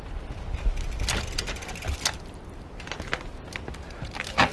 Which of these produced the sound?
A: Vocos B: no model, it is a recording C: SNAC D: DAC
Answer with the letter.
B